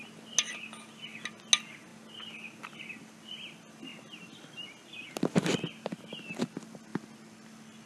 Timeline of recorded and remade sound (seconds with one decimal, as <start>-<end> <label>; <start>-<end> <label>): 0.0-7.9 recorded